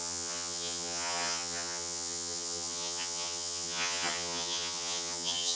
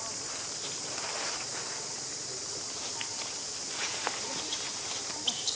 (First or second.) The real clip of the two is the second